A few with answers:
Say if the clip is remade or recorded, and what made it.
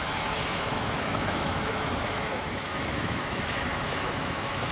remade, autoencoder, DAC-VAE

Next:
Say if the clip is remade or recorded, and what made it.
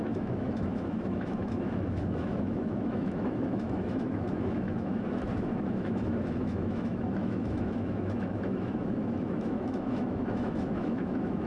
remade, autoencoder, DAC-VAE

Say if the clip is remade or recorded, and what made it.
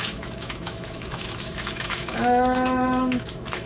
remade, autoencoder, DAC-VAE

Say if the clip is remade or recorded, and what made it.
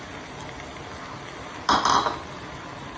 recorded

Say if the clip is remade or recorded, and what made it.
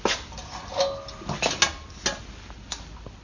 recorded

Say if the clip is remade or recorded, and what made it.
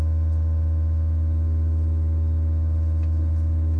recorded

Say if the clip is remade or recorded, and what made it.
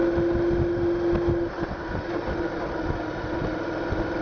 recorded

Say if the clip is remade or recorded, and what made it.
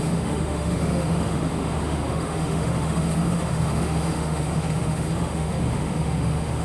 remade, autoencoder, DAC-VAE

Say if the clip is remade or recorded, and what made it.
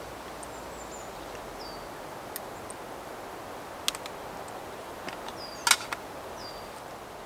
recorded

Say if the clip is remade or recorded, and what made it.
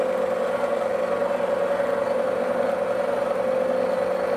recorded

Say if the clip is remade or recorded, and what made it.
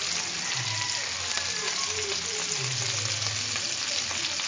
recorded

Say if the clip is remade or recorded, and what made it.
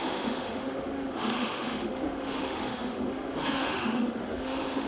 remade, autoencoder, DAC-VAE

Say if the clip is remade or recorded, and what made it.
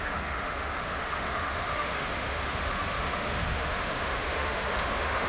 remade, autoencoder, DAC-VAE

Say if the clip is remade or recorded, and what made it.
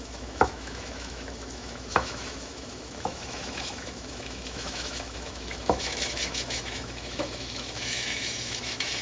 remade, autoencoder, DAC-VAE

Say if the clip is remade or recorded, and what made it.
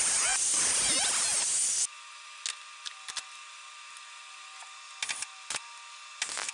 recorded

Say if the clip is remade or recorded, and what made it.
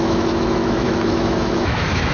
remade, autoencoder, DAC-VAE